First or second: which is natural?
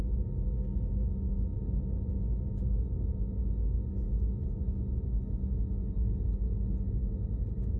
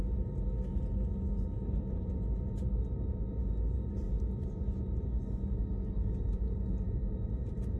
first